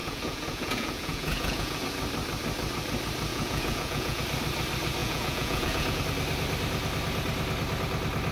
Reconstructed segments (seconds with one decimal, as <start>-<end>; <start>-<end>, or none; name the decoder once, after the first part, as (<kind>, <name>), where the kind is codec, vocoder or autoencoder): 0.0-1.8 (vocoder, Vocos); 3.3-4.2; 5.0-6.0